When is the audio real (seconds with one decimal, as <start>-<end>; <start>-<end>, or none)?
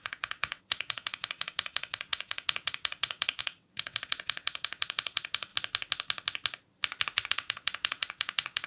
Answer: 5.5-7.3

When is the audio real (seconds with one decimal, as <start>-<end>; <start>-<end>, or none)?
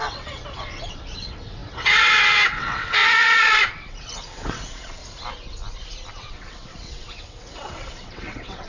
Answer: 5.0-6.1